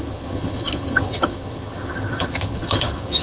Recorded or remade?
remade